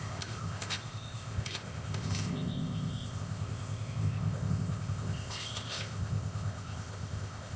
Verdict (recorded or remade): remade